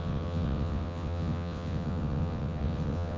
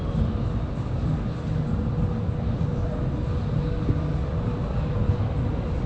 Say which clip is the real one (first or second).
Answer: second